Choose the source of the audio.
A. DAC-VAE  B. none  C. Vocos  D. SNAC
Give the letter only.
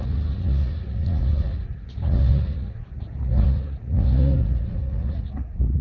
C